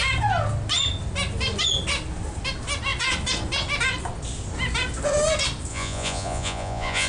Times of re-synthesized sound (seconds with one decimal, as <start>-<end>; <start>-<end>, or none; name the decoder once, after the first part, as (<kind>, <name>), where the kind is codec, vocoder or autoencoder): 5.7-7.1 (vocoder, Vocos)